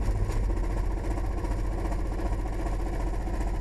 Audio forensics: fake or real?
real